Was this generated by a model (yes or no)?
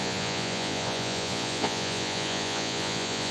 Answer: yes